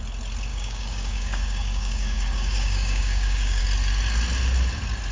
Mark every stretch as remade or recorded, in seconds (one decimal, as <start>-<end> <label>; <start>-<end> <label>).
0.0-0.5 recorded; 0.5-3.6 remade; 3.6-5.1 recorded